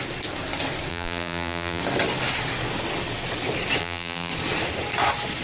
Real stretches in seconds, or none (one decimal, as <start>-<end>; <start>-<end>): 0.0-0.9; 1.8-3.8; 4.3-5.4